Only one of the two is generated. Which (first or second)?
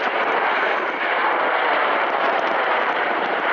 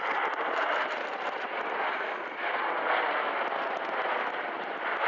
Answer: first